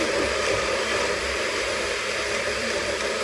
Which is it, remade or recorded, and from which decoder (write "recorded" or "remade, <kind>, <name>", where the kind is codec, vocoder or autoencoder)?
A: remade, vocoder, BigVGAN v2